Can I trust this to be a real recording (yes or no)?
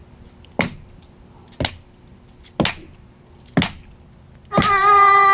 yes